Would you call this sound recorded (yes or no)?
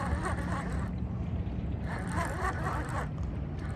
yes